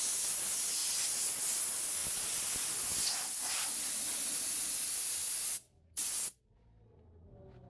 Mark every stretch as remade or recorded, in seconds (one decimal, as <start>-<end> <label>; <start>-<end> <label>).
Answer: 0.0-7.7 recorded